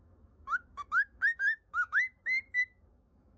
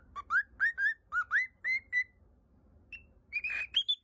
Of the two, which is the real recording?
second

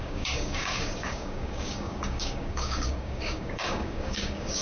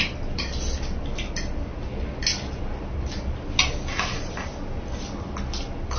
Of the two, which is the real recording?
second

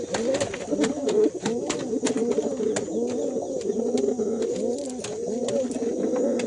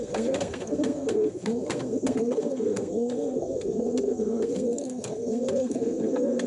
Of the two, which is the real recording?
first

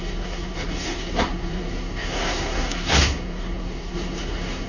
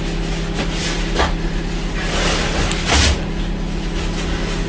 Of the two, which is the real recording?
second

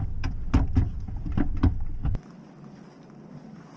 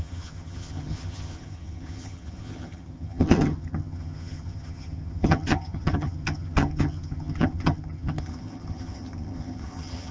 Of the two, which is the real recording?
first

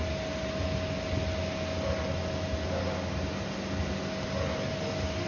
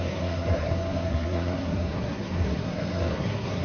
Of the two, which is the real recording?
first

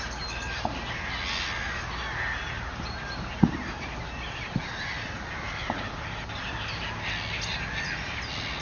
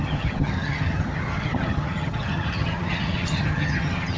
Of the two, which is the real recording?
first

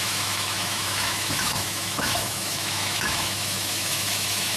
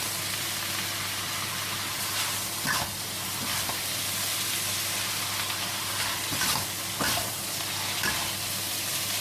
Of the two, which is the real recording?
second